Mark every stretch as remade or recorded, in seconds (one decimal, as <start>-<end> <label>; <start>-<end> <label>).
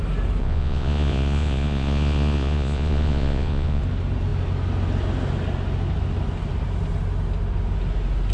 0.0-0.4 recorded; 0.4-3.8 remade; 3.8-8.3 recorded